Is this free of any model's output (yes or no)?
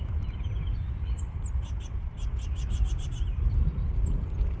yes